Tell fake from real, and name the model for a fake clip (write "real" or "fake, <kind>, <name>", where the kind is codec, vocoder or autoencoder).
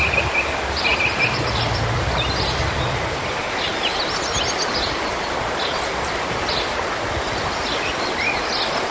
real